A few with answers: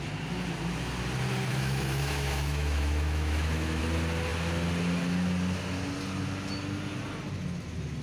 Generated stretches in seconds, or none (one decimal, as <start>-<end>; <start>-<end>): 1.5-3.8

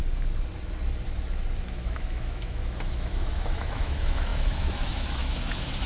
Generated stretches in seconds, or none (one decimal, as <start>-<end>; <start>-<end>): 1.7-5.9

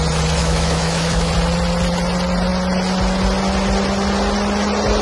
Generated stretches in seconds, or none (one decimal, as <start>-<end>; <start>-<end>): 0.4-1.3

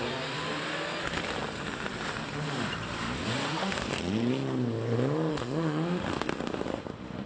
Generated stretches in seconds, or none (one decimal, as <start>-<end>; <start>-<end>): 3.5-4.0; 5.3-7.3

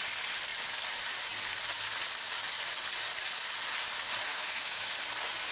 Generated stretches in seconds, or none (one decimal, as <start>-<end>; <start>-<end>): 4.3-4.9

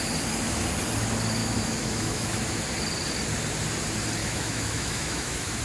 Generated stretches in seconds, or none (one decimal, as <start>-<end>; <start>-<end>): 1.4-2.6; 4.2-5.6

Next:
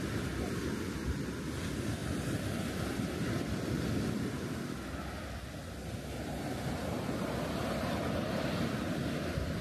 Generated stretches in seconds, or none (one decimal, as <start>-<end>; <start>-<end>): none

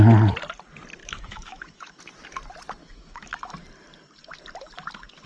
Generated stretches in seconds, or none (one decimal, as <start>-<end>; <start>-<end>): 1.0-2.0; 2.8-3.5